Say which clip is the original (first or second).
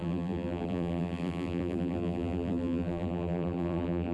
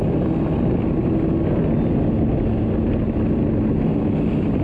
second